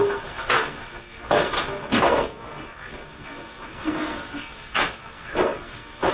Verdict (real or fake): fake